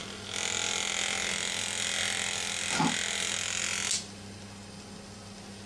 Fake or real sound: real